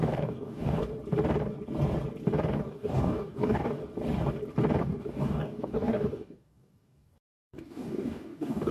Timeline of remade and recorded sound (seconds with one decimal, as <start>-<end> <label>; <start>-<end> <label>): 0.0-0.8 remade; 0.8-2.7 recorded; 2.7-3.8 remade; 3.8-4.8 recorded; 4.8-8.7 remade